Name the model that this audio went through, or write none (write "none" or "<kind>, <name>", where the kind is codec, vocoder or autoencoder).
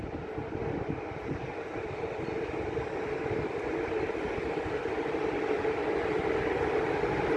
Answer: none